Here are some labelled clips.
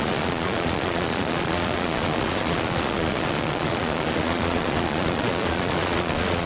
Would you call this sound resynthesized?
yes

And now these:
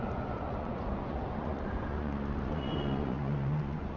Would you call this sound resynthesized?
yes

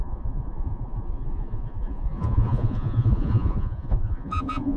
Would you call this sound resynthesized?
yes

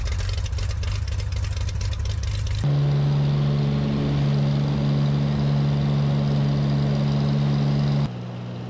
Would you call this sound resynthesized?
no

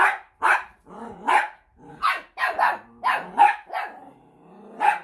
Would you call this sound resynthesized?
no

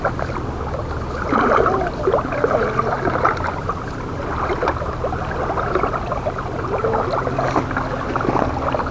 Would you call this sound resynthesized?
no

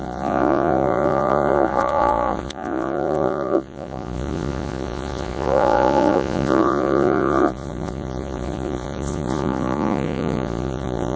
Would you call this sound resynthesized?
yes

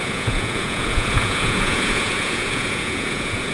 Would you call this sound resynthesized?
yes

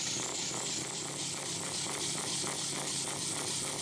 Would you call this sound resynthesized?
no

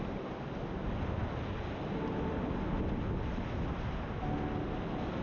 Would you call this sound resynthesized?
no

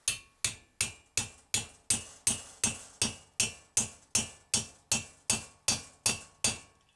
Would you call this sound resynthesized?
no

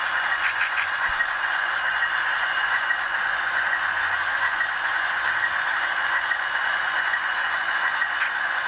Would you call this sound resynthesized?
yes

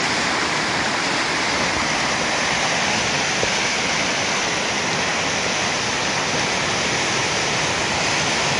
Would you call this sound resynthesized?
no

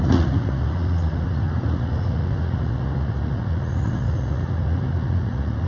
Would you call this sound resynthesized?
yes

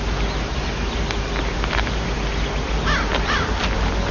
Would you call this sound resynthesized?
no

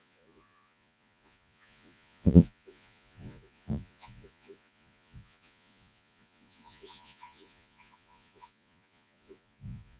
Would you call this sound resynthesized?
yes